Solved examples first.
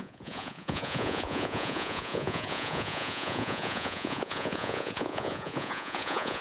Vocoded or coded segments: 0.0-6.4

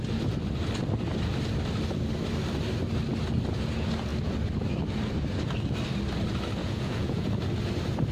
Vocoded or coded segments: 6.6-7.3